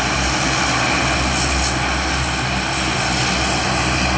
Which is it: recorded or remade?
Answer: recorded